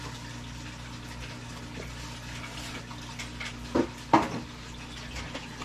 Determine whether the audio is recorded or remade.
recorded